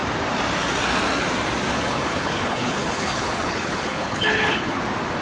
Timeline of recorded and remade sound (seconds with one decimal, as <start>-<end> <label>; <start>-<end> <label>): 0.0-1.7 recorded; 1.7-4.8 remade; 4.8-5.2 recorded